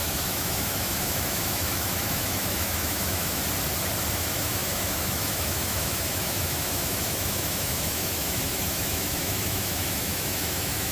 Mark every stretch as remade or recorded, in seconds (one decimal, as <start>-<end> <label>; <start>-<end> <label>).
0.0-3.4 remade; 3.4-4.1 recorded; 4.1-10.9 remade